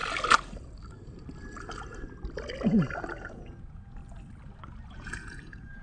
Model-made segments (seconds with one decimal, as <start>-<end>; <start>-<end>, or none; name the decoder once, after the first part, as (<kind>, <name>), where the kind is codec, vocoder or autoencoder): 3.3-4.0 (vocoder, Vocos); 4.9-5.8